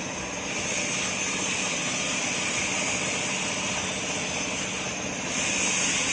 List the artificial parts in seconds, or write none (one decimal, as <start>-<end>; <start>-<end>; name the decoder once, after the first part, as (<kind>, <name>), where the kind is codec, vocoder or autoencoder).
none